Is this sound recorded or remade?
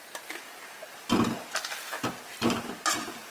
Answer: recorded